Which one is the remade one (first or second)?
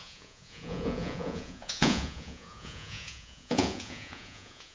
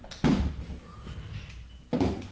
first